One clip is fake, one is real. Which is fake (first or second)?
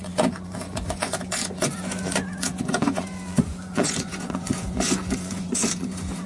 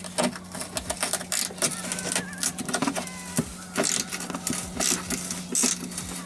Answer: first